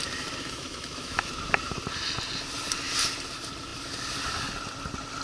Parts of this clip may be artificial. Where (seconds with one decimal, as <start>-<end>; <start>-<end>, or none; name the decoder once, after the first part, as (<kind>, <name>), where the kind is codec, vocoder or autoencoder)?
0.4-1.3 (autoencoder, DAC-VAE)